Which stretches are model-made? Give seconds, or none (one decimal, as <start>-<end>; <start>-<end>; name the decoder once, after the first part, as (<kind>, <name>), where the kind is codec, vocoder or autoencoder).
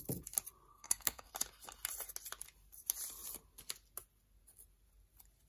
0.7-1.3 (codec, SNAC)